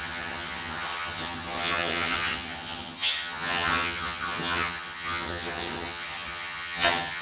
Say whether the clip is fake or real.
fake